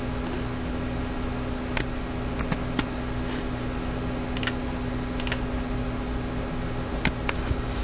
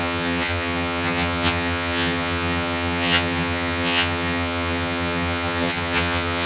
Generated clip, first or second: second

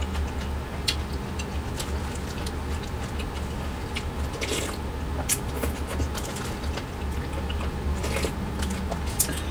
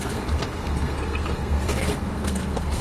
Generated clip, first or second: second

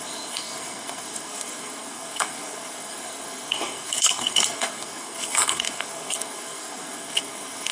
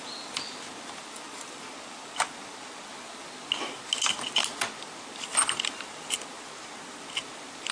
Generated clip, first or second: first